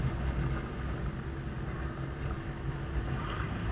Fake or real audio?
real